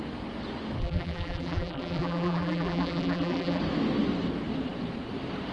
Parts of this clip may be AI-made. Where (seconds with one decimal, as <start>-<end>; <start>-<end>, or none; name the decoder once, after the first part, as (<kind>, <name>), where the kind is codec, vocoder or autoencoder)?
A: 0.8-3.6 (vocoder, BigVGAN v2)

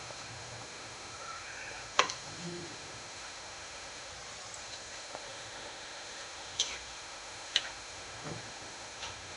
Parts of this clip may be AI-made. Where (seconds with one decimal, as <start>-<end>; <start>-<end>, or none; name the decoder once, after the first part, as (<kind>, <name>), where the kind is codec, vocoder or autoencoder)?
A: 0.0-4.1 (autoencoder, DAC-VAE); 4.6-9.4

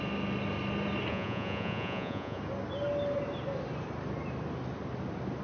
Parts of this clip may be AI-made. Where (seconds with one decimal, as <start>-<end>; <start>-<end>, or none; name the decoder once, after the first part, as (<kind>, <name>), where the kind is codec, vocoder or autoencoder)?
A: 1.1-2.4 (vocoder, Vocos)

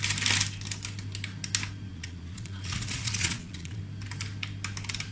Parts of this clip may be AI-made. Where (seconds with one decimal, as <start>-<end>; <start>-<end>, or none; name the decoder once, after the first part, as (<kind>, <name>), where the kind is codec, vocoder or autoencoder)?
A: 1.9-3.8 (vocoder, Vocos)

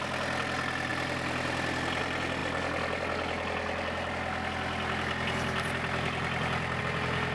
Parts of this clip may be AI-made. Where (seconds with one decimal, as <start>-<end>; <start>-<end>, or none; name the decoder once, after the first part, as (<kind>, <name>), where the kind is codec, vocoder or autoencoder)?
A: none

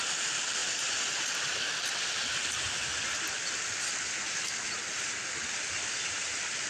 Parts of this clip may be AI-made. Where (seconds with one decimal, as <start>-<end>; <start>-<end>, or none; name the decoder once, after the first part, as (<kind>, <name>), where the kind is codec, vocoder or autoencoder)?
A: 0.6-1.4 (vocoder, BigVGAN v2)